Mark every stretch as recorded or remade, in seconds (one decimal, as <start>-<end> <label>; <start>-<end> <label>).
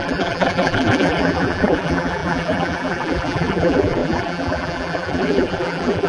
0.0-6.1 remade